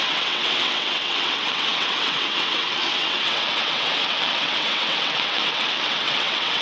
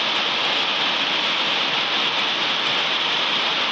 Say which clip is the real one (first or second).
second